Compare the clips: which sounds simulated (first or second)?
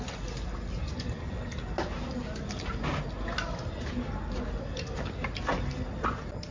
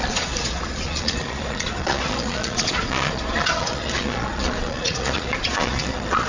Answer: second